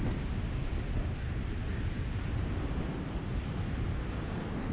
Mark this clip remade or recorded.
recorded